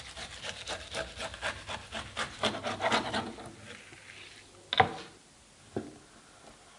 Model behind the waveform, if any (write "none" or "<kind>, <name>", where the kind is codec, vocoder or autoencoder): none